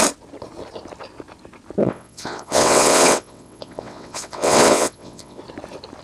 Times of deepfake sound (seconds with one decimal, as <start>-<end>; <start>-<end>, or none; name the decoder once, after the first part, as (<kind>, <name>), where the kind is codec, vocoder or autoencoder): 1.8-5.4 (vocoder, WaveNeXt)